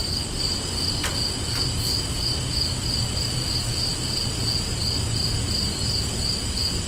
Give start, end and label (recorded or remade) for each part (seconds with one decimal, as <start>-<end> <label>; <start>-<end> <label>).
0.0-6.9 recorded